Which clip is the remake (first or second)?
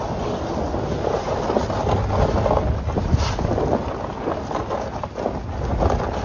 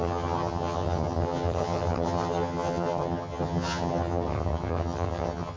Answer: second